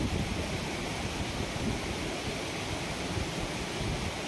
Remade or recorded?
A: recorded